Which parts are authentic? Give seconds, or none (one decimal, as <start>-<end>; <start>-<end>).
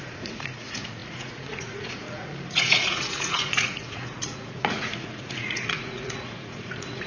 none